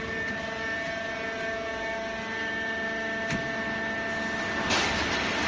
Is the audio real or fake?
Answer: real